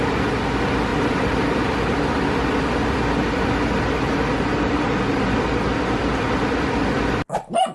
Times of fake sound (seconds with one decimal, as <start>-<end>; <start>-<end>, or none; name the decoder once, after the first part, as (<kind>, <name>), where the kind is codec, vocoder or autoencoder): 0.9-1.6 (vocoder, BigVGAN v2)